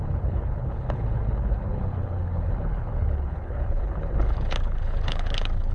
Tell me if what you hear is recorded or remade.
remade